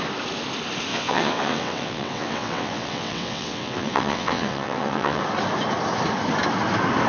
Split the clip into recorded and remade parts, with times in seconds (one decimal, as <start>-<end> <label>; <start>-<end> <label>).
0.0-0.9 recorded; 0.9-5.2 remade; 5.2-7.1 recorded